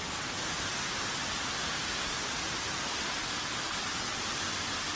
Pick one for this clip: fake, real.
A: real